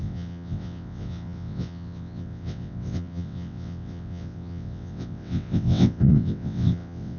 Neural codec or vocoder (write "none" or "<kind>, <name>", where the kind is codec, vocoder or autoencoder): vocoder, WaveNeXt